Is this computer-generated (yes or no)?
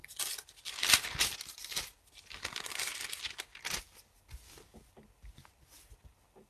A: no